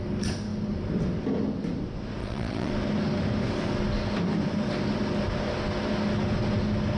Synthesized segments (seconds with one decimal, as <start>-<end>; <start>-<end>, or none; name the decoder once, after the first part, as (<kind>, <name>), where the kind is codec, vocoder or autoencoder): 2.2-2.7 (vocoder, WaveNeXt)